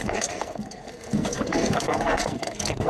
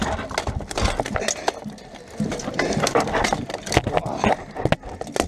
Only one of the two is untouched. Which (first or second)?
second